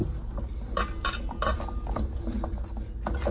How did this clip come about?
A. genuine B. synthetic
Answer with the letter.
A